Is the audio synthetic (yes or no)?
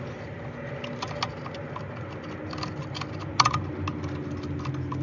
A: no